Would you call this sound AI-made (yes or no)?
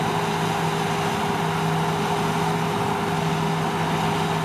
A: no